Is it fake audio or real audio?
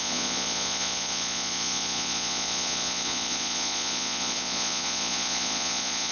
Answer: fake